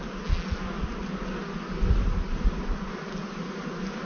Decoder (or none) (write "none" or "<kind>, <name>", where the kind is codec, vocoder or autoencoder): none